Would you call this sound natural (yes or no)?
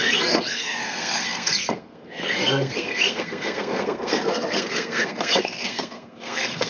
no